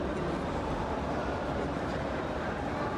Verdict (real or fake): real